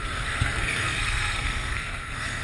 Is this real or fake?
fake